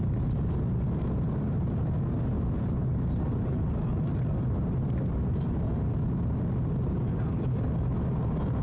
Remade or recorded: recorded